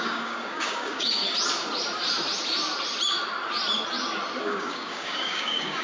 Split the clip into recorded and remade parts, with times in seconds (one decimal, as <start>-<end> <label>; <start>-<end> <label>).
0.0-1.2 remade; 1.2-4.4 recorded; 4.4-5.8 remade